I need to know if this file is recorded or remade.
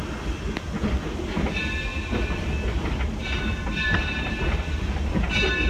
recorded